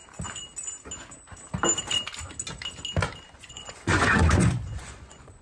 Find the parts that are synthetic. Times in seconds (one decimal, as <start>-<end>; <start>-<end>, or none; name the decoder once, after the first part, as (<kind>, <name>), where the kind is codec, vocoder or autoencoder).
3.2-5.4 (vocoder, Vocos)